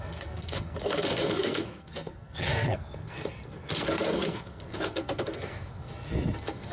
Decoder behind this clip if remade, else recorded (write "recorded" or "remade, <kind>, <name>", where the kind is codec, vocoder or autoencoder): remade, codec, SNAC